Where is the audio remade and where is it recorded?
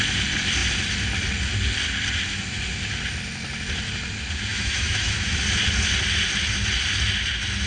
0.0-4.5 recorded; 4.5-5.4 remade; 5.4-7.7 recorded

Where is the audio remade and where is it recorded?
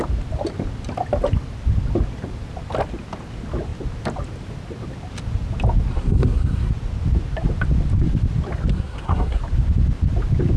0.0-5.9 recorded; 5.9-6.7 remade; 6.7-8.7 recorded; 8.7-9.4 remade; 9.4-10.6 recorded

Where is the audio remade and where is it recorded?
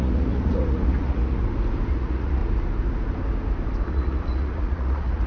0.0-1.4 remade; 1.4-1.9 recorded; 1.9-2.4 remade; 2.4-3.9 recorded; 3.9-5.3 remade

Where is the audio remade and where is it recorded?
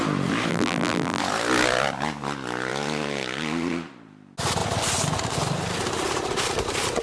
0.0-0.5 recorded; 0.5-1.2 remade; 1.2-7.0 recorded